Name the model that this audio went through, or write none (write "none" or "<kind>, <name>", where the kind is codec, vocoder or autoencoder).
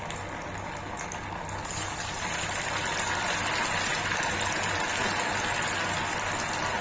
none